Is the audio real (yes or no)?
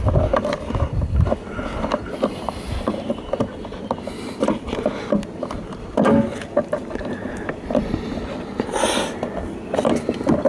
yes